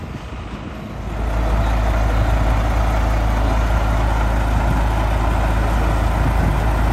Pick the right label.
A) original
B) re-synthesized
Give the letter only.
A